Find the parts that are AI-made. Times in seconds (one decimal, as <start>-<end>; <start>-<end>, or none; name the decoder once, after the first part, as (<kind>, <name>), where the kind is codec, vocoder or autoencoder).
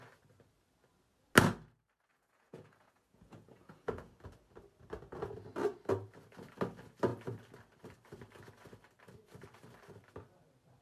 2.1-4.1 (vocoder, Vocos)